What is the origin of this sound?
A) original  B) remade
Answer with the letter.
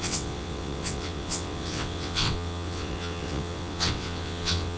B